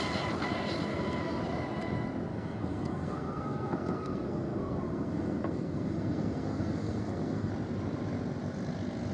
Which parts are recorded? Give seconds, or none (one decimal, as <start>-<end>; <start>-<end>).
0.0-0.9; 1.4-2.3; 7.5-9.1